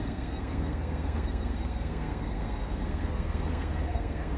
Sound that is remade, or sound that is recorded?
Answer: remade